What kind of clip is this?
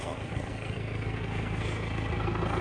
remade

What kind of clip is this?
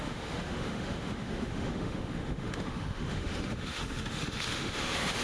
remade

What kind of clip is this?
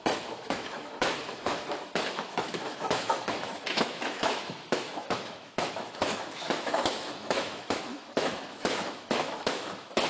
remade